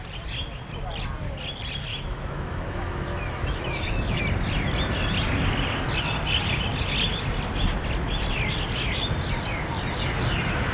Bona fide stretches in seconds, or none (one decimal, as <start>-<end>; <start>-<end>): 0.0-1.9; 4.2-10.7